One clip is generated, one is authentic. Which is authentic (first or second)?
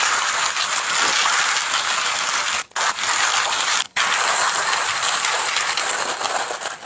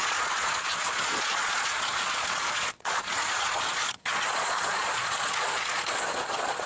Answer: first